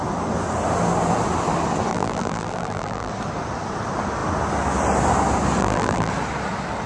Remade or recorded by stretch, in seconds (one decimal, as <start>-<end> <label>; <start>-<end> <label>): 0.0-1.9 recorded; 1.9-3.1 remade; 3.1-5.6 recorded; 5.6-6.1 remade; 6.1-6.9 recorded